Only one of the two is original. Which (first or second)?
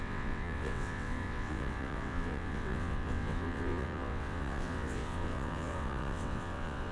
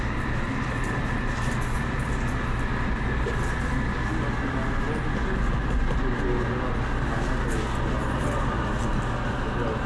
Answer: second